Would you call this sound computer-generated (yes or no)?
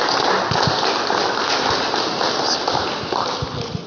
no